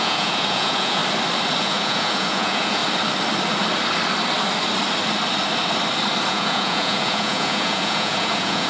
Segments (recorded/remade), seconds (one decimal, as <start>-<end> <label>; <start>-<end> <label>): 0.0-1.0 remade; 1.0-1.6 recorded; 1.6-2.8 remade; 2.8-6.3 recorded; 6.3-8.7 remade